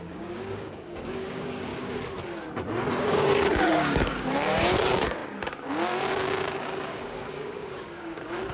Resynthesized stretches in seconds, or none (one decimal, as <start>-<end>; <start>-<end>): 0.0-1.7; 3.0-8.5